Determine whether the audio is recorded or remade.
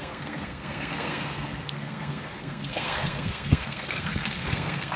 remade